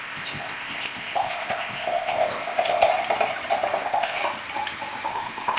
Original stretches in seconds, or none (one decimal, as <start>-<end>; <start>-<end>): 2.9-3.8; 4.2-5.1